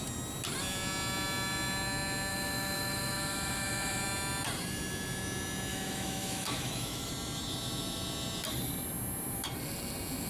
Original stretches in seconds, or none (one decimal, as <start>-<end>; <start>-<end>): 0.0-2.3; 4.0-5.7; 7.1-10.3